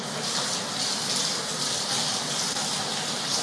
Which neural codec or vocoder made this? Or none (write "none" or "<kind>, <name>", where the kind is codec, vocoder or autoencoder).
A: none